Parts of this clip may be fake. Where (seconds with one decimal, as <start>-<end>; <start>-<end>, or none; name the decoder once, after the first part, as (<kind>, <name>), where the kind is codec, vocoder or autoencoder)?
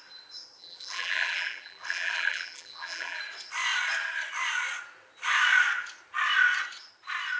0.6-3.2 (vocoder, BigVGAN v2)